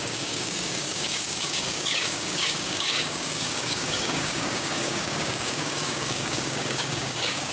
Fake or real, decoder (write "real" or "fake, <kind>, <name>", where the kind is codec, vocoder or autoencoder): fake, codec, DAC